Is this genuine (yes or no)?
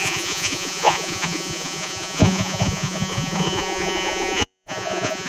no